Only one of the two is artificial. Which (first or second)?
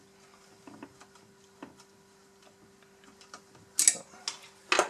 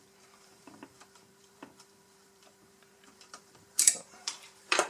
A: second